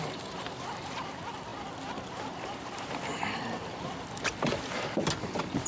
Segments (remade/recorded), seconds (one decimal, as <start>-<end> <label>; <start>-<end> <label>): 0.0-5.7 recorded